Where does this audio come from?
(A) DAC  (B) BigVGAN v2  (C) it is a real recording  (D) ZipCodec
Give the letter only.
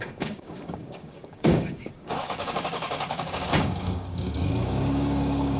A